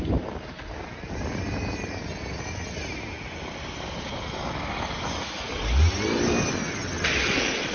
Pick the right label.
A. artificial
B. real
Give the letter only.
B